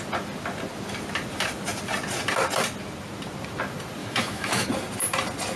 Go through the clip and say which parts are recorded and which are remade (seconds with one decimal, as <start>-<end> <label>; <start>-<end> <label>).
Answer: 0.0-4.0 recorded; 4.0-4.7 remade; 4.7-5.6 recorded